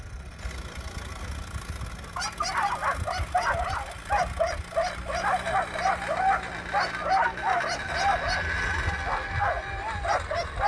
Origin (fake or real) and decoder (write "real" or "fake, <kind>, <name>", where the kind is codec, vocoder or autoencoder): real